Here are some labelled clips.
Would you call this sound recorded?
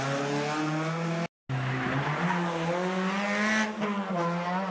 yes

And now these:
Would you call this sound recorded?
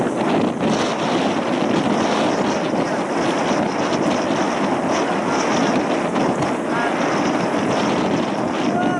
yes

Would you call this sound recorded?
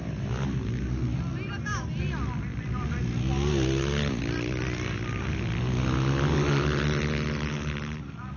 yes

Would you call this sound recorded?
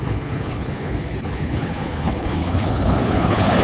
no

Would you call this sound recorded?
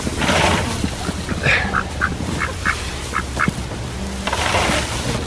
yes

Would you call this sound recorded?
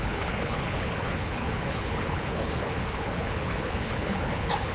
no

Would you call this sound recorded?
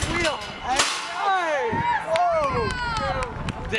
yes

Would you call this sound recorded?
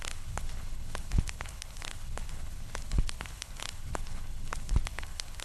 no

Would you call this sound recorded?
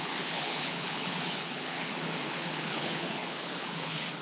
no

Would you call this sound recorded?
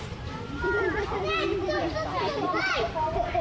yes